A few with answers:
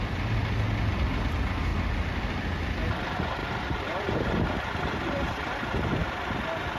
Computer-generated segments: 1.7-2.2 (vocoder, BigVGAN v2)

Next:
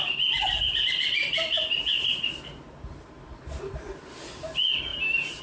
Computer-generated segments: 1.2-2.3 (vocoder, BigVGAN v2); 4.9-5.4

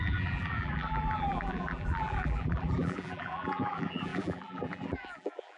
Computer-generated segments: 0.0-5.6 (vocoder, BigVGAN v2)

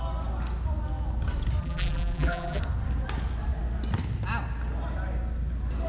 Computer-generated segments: 1.6-2.6 (vocoder, BigVGAN v2)

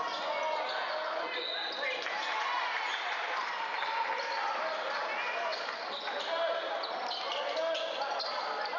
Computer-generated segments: 2.6-3.5 (vocoder, BigVGAN v2)

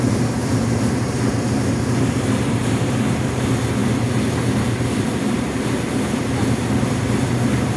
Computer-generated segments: 0.0-3.8 (vocoder, BigVGAN v2); 4.8-7.8